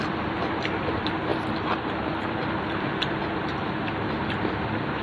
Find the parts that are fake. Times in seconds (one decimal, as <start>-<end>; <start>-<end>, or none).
none